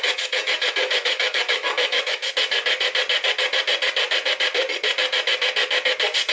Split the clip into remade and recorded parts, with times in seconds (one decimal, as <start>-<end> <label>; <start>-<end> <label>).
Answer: 0.0-2.2 remade; 2.2-6.3 recorded